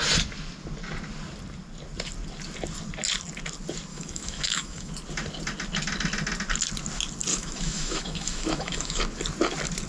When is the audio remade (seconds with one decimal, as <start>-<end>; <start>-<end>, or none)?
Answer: 3.9-4.9; 7.3-9.0